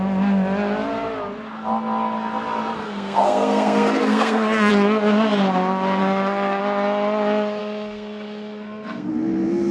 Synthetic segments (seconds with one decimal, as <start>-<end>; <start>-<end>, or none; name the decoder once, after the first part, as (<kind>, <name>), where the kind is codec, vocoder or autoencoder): 2.8-4.7 (codec, SNAC); 6.0-6.6; 7.6-9.1